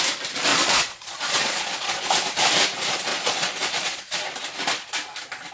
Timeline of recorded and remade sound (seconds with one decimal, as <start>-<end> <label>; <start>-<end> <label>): 0.0-0.5 recorded; 0.5-2.1 remade; 2.1-3.1 recorded; 3.1-4.0 remade; 4.0-5.5 recorded